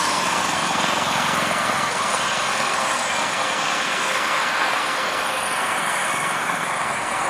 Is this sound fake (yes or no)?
yes